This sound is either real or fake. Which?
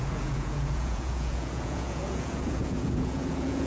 fake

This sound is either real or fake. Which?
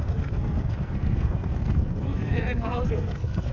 fake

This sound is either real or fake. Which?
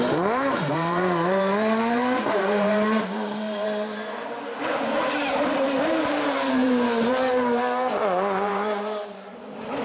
fake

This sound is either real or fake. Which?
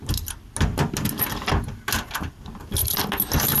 real